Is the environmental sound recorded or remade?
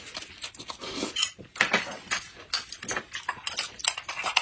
recorded